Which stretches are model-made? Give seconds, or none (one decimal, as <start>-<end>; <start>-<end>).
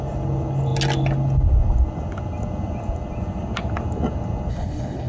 4.5-5.1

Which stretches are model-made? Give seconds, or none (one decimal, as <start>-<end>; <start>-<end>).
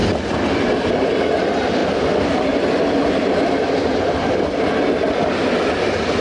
none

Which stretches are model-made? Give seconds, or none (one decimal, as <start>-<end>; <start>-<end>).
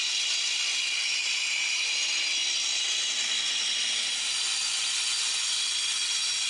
none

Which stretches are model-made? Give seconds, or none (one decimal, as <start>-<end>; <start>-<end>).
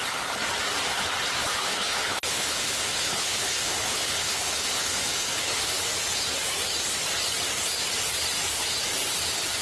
1.4-5.8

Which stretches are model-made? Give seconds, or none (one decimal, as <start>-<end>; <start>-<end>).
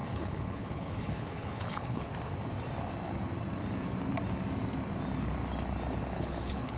0.0-2.1; 6.2-6.8